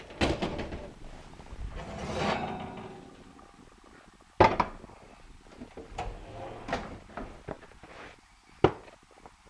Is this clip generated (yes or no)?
no